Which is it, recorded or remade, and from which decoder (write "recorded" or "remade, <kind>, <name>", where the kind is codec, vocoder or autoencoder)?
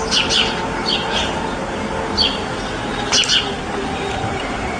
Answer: recorded